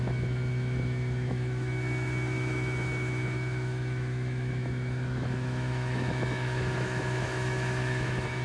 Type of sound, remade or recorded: remade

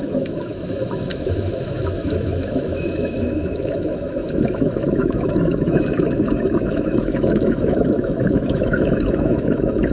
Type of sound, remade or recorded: remade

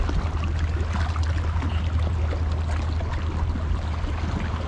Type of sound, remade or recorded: recorded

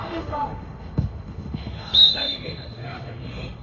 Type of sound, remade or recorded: remade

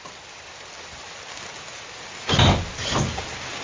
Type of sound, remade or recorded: recorded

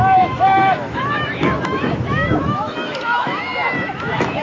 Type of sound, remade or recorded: remade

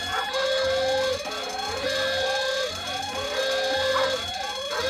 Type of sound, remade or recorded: recorded